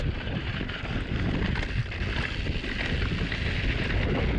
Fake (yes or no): no